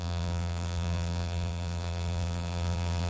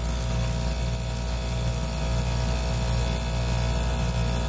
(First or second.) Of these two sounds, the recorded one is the second